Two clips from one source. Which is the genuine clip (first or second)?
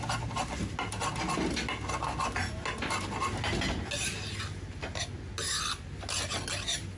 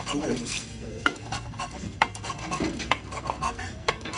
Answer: first